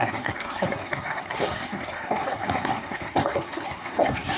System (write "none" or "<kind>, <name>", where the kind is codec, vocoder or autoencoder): codec, SNAC